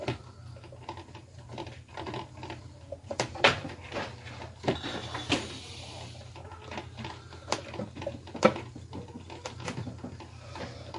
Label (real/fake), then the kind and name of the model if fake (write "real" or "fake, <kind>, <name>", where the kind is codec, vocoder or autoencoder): real